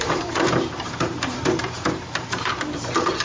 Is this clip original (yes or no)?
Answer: no